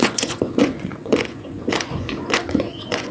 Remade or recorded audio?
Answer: remade